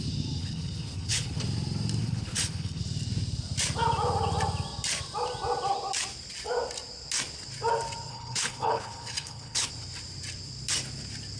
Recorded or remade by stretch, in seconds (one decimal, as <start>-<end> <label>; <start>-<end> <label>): 0.0-0.4 recorded; 0.4-1.4 remade; 1.4-2.0 recorded; 2.0-2.8 remade; 2.8-8.1 recorded; 8.1-9.7 remade; 9.7-11.4 recorded